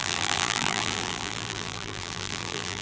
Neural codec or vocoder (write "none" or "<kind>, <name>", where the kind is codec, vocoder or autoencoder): vocoder, BigVGAN v2